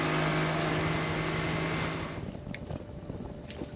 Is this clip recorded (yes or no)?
yes